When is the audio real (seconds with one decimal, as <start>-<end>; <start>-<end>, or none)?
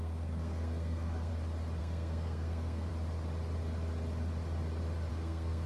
1.3-1.8; 2.9-5.1